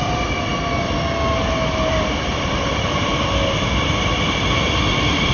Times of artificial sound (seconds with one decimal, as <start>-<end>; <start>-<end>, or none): 0.0-0.5; 1.9-5.3